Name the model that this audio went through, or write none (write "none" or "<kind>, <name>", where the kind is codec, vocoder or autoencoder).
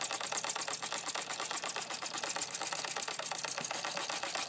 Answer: none